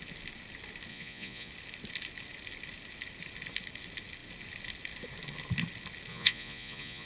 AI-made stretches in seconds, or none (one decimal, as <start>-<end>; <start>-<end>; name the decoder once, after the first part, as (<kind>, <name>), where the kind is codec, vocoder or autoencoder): 0.9-1.5 (vocoder, Vocos); 6.1-7.1